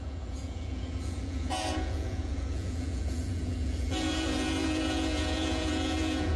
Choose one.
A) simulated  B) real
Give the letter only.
A